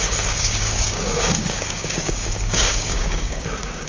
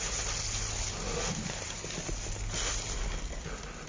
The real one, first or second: second